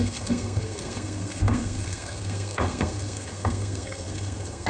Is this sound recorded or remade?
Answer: remade